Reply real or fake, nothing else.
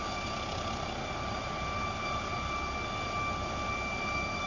real